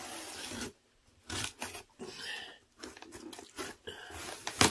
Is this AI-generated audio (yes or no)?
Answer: no